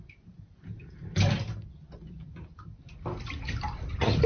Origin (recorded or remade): recorded